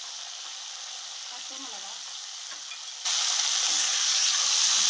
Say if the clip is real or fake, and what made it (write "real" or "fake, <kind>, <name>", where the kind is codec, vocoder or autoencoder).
real